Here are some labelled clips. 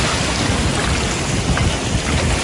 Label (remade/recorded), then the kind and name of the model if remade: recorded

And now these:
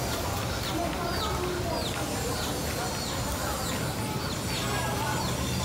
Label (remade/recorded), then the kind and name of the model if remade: recorded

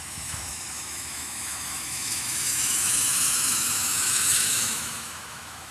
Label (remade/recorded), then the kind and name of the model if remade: remade, autoencoder, DAC-VAE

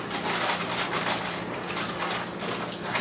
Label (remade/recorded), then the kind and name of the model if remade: recorded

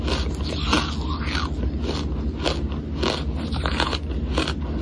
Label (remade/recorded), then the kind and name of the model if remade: recorded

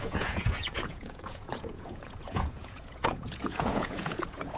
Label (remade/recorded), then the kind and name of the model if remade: remade, vocoder, Vocos